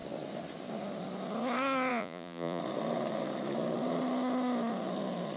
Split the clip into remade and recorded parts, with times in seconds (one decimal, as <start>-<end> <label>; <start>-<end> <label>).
0.0-1.9 recorded; 1.9-2.6 remade; 2.6-5.4 recorded